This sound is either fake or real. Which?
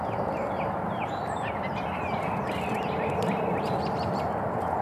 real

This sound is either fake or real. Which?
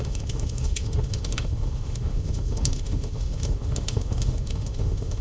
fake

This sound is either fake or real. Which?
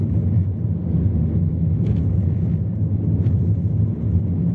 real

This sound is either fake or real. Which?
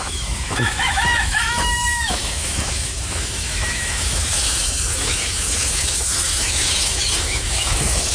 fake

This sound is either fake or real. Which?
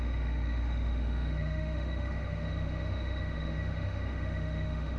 fake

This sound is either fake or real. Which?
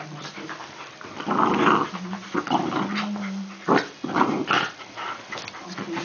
real